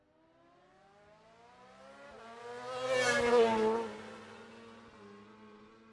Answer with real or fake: real